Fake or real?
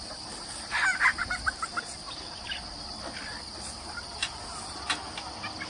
real